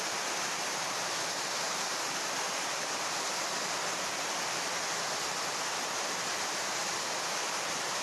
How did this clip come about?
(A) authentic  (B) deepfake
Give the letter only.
A